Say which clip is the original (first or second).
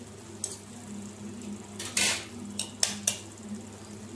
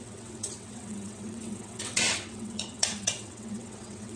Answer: first